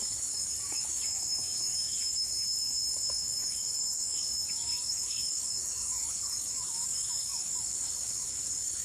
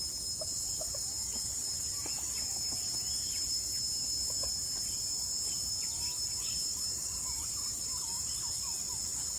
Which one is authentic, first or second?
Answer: second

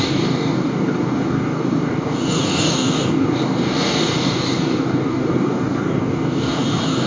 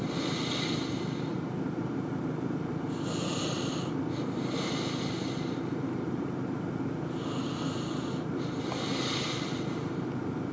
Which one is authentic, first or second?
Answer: second